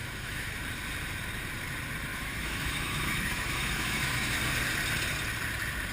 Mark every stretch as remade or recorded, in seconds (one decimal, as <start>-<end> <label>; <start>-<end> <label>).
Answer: 0.0-0.6 remade; 0.6-2.1 recorded; 2.1-4.4 remade; 4.4-5.9 recorded